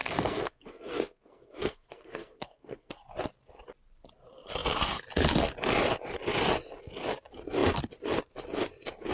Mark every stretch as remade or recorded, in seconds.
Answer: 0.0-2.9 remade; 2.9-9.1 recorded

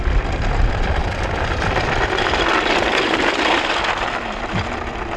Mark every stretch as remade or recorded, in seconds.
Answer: 0.0-5.2 recorded